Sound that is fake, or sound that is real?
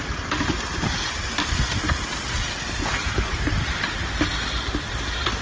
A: real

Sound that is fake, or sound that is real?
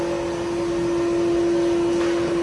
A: real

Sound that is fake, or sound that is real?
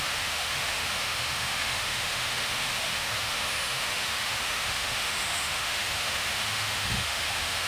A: fake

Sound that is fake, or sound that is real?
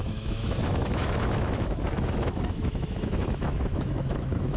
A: fake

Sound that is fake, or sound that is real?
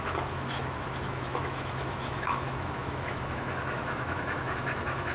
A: fake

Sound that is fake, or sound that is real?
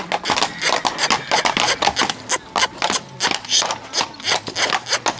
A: real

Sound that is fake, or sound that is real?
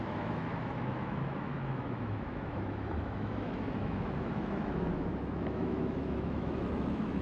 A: fake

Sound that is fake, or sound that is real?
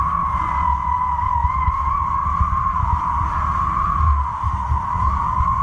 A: real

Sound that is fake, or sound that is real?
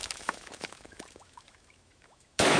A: fake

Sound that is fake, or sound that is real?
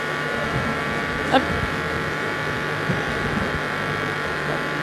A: fake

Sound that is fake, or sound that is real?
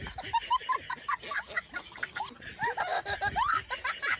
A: real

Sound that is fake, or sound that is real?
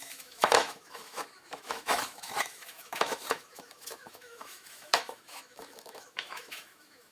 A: fake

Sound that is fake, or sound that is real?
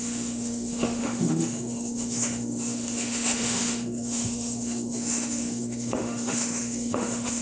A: fake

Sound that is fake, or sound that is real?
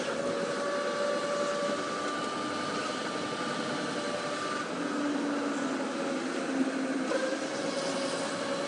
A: real